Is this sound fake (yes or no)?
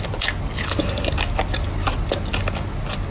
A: no